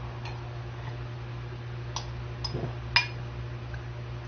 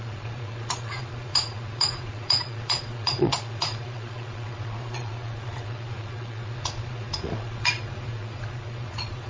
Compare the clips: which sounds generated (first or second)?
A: second